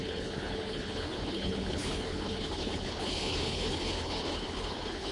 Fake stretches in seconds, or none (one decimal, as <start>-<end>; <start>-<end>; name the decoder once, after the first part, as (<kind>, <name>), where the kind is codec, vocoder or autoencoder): 0.0-5.1 (codec, HILCodec)